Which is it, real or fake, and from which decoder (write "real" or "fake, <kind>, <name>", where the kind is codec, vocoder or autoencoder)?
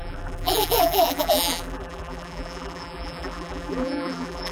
fake, vocoder, BigVGAN v2